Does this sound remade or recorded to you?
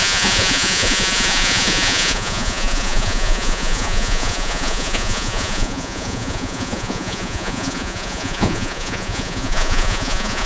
remade